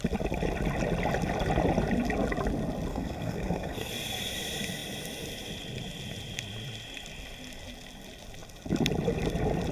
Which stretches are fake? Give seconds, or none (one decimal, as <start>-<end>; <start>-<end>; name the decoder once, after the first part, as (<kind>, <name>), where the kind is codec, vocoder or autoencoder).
2.9-3.9 (codec, SNAC)